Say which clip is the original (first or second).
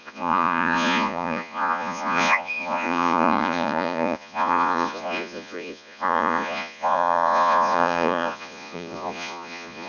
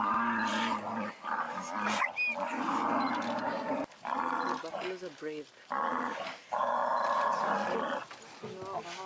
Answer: second